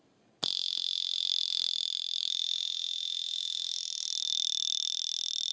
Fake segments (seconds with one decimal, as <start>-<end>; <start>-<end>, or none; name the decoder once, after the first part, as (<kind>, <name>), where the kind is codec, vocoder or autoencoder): none

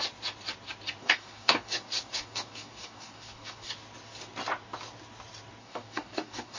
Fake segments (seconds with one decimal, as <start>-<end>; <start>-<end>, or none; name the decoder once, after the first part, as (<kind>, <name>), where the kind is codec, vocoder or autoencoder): 1.0-3.7 (codec, DAC); 5.6-6.6